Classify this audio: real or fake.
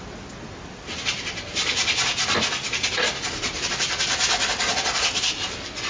real